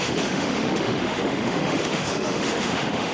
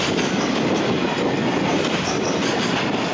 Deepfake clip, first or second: first